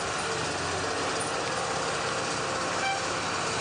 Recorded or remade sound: recorded